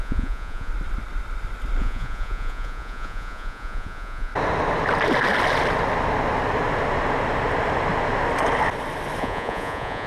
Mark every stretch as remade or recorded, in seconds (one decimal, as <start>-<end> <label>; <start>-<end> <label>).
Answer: 0.0-0.7 remade; 0.7-1.8 recorded; 1.8-4.3 remade; 4.3-9.2 recorded; 9.2-10.1 remade